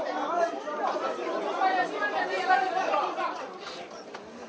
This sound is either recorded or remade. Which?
recorded